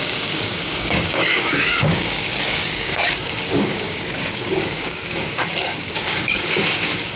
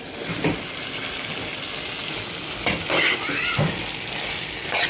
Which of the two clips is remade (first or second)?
first